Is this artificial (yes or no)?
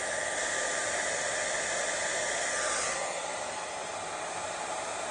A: no